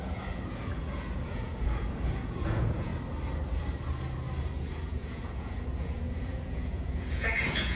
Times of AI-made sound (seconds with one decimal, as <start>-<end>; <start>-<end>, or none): 0.0-2.9; 4.4-7.8